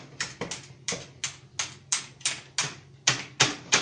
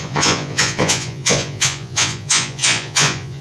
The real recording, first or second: first